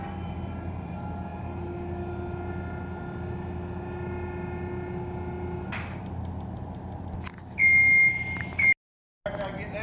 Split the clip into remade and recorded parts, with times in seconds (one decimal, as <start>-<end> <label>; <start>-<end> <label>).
0.0-9.8 recorded